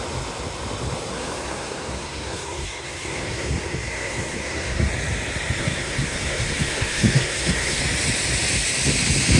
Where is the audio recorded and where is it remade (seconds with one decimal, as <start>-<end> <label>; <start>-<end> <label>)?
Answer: 0.0-1.1 recorded; 1.1-4.9 remade; 4.9-5.6 recorded; 5.6-7.8 remade; 7.8-9.4 recorded